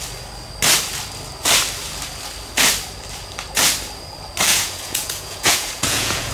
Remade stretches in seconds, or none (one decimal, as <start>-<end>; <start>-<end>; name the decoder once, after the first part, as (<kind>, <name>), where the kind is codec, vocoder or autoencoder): 4.5-6.3 (vocoder, Vocos)